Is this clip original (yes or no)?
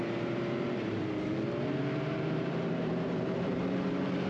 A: no